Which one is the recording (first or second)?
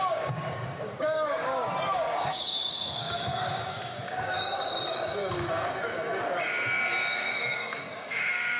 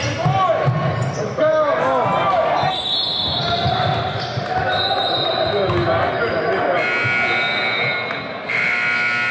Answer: second